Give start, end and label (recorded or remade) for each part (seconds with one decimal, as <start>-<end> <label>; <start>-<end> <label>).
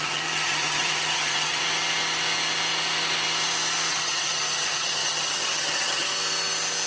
0.0-1.6 remade; 1.6-3.9 recorded; 3.9-6.1 remade; 6.1-6.9 recorded